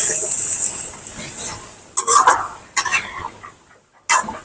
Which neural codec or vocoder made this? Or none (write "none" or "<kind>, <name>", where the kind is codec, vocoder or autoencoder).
none